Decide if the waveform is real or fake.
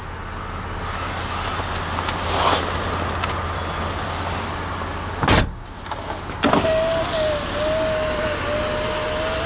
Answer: real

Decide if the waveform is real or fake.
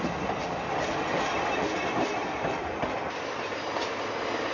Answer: real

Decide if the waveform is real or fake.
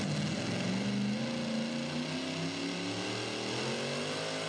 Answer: real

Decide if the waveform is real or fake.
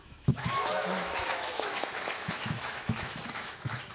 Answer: fake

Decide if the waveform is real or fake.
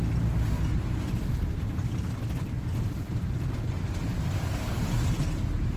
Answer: real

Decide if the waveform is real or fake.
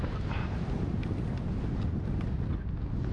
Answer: real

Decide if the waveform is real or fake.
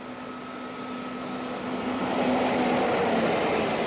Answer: real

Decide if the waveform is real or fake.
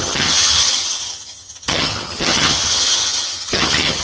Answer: fake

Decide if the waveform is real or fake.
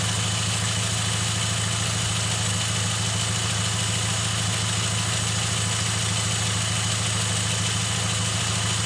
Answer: real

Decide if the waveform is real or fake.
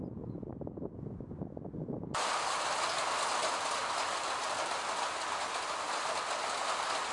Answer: real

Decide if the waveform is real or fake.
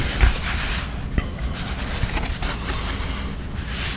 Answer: real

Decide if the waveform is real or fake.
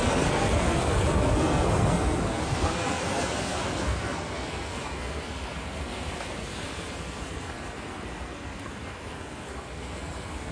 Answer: fake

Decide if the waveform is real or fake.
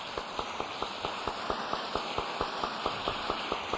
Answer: real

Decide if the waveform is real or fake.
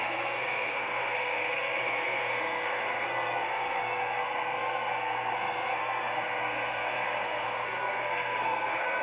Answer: fake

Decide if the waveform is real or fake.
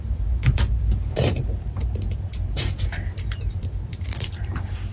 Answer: fake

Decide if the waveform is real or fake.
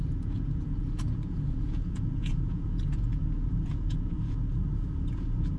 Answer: fake